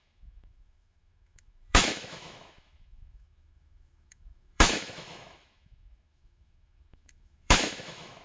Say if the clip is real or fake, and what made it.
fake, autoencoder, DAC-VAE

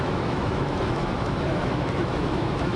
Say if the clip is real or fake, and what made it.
fake, autoencoder, DAC-VAE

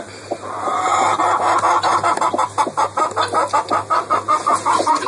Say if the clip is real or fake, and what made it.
real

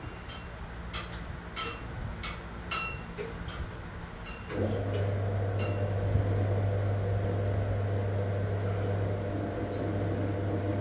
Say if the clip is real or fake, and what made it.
real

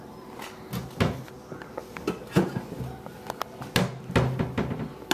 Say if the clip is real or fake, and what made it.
real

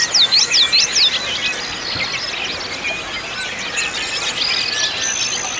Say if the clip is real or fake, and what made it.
real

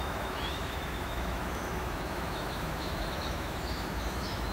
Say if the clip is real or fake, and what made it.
fake, autoencoder, DAC-VAE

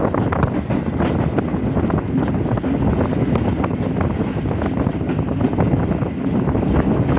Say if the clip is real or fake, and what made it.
real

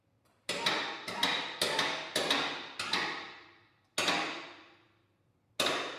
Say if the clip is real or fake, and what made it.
real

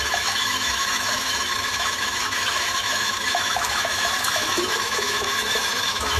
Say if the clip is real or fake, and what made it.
fake, autoencoder, DAC-VAE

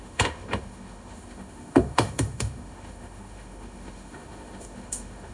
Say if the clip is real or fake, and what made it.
fake, autoencoder, DAC-VAE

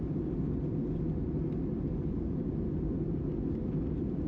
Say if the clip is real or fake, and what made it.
real